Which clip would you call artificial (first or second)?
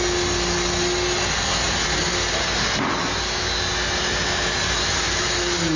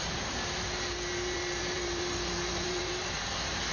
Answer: second